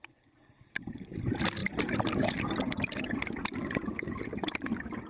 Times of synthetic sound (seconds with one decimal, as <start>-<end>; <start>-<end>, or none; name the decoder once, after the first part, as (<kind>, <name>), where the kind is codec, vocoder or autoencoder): none